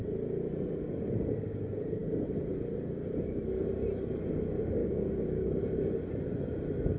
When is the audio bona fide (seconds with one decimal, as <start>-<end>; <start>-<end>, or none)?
0.0-4.8; 5.6-7.0